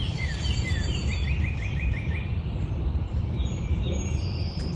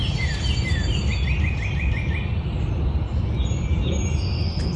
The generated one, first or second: first